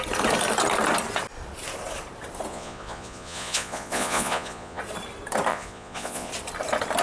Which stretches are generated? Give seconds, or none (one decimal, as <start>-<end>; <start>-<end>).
2.5-4.8; 5.5-6.3